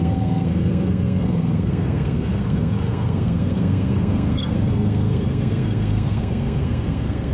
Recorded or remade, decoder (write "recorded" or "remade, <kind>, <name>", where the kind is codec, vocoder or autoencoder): remade, codec, SNAC